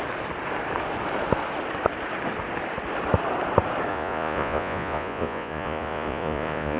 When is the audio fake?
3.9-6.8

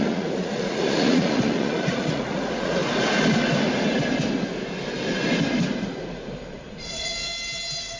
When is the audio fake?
0.0-2.8; 6.5-7.1

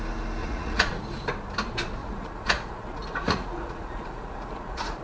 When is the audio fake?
0.4-1.0; 2.0-5.0